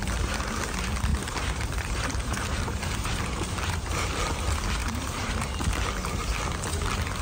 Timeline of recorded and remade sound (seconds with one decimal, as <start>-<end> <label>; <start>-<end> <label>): 0.0-1.1 recorded; 1.1-3.9 remade; 3.9-4.8 recorded; 4.8-5.5 remade; 5.5-7.2 recorded